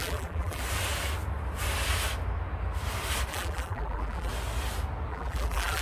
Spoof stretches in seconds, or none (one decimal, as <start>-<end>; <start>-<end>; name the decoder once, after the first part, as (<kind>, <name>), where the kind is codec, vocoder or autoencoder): 0.0-0.6 (vocoder, BigVGAN v2); 3.3-4.3; 5.1-5.8